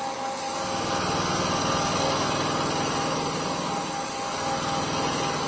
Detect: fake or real real